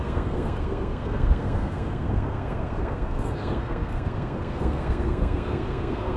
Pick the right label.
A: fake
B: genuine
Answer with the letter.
A